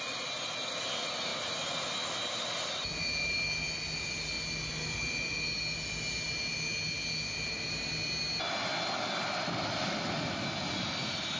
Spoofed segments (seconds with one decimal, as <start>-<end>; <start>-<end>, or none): none

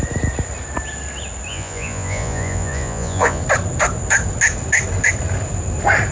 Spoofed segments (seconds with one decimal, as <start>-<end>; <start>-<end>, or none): 1.5-3.4

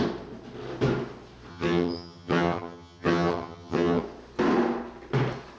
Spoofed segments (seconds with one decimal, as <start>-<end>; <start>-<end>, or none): 1.5-4.0

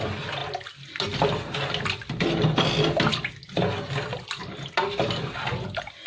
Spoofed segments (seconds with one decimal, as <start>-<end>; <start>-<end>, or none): none

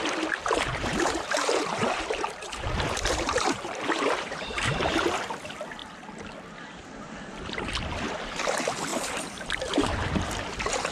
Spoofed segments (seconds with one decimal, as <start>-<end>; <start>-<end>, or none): 0.4-5.2; 8.9-10.9

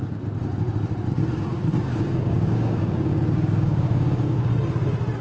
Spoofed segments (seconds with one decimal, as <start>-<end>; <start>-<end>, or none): 1.8-4.5